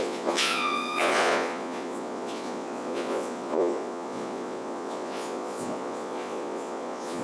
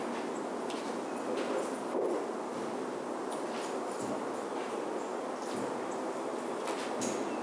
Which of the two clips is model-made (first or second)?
first